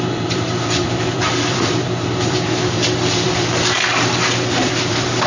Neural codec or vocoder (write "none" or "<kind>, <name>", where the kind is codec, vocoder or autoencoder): vocoder, BigVGAN v2